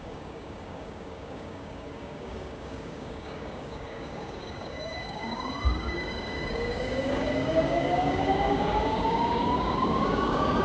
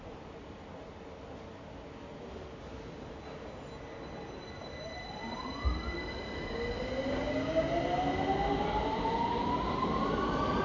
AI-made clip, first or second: first